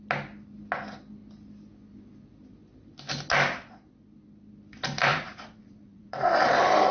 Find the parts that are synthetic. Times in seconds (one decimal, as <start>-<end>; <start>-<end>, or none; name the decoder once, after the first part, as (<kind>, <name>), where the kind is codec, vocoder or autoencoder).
5.1-6.3 (vocoder, Vocos)